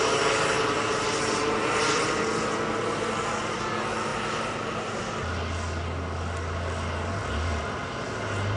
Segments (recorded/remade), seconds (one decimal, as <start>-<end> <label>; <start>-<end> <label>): 0.0-4.1 recorded; 4.1-5.0 remade; 5.0-8.6 recorded